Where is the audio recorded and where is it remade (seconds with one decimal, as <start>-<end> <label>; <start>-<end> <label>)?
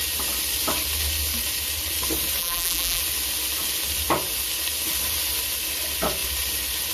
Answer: 0.0-2.4 recorded; 2.4-3.0 remade; 3.0-6.9 recorded